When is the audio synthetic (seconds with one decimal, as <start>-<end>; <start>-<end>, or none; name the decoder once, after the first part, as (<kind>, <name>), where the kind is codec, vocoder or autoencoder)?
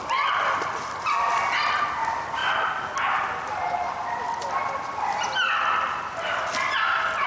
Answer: none